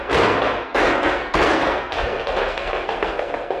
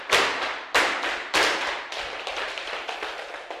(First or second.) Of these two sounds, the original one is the second